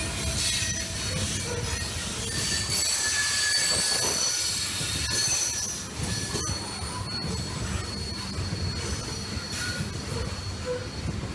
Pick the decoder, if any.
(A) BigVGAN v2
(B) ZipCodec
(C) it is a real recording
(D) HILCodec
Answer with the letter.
C